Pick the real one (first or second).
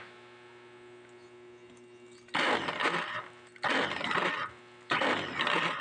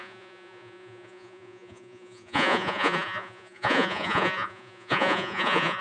first